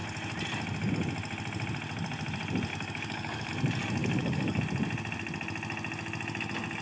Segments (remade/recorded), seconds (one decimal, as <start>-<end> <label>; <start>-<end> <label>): 0.0-2.7 recorded; 2.7-3.5 remade; 3.5-4.0 recorded; 4.0-4.6 remade; 4.6-6.8 recorded